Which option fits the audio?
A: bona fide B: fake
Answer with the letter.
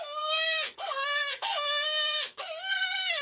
B